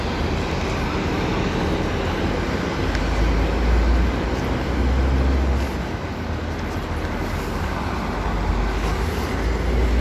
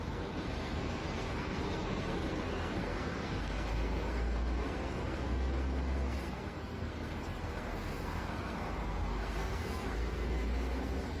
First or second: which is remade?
second